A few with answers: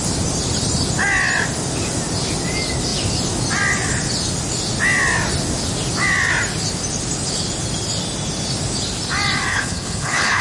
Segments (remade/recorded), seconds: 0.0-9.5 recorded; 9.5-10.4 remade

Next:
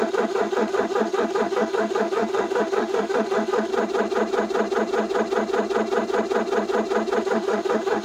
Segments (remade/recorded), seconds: 0.0-3.7 remade; 3.7-7.2 recorded; 7.2-8.0 remade

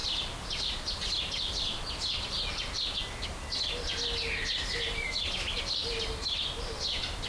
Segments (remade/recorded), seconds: 0.0-1.0 remade; 1.0-7.3 recorded